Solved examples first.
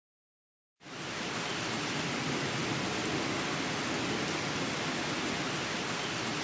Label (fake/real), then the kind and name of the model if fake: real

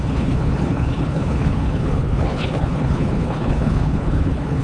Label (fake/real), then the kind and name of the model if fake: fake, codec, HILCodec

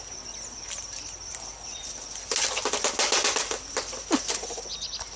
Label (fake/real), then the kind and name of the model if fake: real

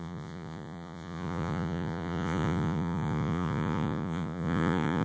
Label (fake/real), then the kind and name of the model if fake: fake, vocoder, Vocos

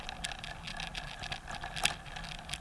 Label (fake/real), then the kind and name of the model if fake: real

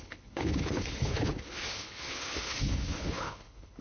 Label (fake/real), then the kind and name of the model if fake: fake, codec, HILCodec